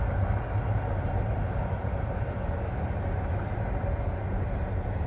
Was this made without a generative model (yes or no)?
yes